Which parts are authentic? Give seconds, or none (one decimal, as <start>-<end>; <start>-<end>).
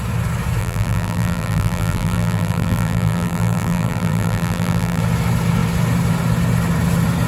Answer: 0.0-0.6; 5.0-7.3